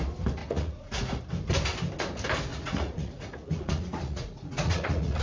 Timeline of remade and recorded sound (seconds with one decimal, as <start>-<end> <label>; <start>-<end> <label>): 0.0-0.4 recorded; 0.4-1.2 remade; 1.2-2.5 recorded; 2.5-5.2 remade